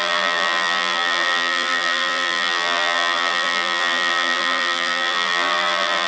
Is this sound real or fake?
fake